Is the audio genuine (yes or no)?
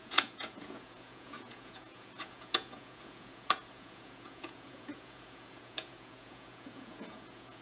no